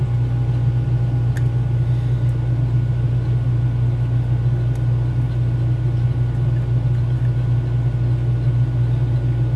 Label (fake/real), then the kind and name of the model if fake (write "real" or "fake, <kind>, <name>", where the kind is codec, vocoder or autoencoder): real